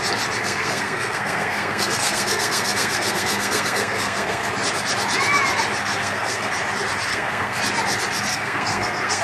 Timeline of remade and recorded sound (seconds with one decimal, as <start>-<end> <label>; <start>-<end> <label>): 0.0-0.4 recorded; 0.4-4.5 remade; 4.5-5.8 recorded; 5.8-6.5 remade; 6.5-7.1 recorded; 7.1-7.6 remade; 7.6-8.3 recorded; 8.3-9.2 remade